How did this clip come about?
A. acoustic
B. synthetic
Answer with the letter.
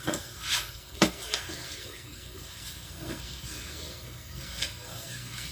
B